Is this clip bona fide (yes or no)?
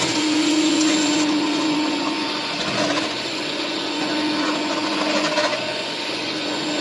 no